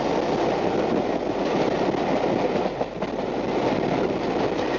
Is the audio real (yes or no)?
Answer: yes